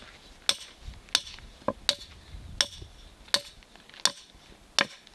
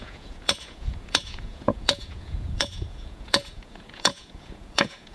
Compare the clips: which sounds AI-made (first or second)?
second